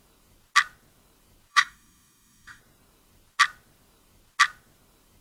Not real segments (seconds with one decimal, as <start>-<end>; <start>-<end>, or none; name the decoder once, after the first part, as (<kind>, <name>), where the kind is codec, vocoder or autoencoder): 1.5-2.6 (codec, DAC)